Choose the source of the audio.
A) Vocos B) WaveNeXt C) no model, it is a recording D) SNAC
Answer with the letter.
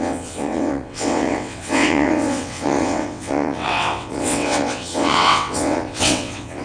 B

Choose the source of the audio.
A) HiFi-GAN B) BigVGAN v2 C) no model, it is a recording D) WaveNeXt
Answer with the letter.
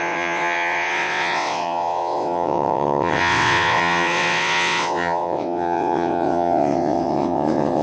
D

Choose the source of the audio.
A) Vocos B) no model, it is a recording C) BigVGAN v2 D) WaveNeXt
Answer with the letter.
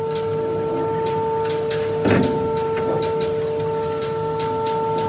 B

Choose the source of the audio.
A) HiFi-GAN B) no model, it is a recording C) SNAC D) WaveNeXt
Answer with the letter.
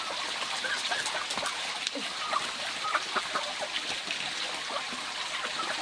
B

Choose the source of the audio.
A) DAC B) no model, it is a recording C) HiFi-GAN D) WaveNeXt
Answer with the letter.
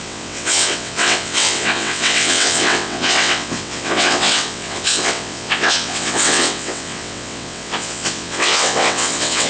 D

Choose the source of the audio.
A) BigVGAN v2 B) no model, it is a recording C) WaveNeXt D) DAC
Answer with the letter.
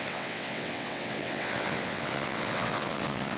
C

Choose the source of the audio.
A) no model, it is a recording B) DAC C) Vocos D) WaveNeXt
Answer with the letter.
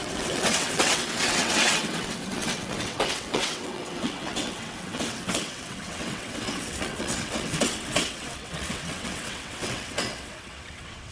D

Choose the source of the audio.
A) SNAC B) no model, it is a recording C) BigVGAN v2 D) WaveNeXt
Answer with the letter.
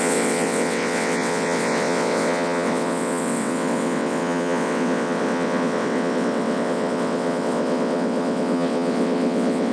D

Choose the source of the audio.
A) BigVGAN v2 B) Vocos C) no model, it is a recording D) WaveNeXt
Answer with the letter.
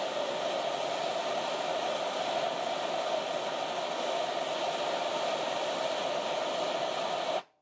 C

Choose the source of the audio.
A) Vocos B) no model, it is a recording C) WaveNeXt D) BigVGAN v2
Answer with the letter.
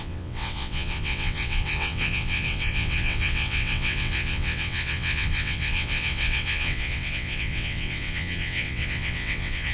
C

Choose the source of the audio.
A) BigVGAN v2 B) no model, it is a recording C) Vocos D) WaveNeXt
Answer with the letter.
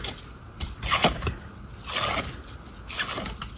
B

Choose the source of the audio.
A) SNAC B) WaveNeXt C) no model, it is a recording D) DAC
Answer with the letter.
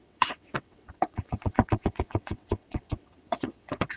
B